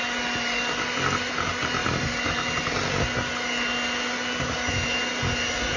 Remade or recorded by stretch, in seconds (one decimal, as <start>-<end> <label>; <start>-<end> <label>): 0.0-5.8 recorded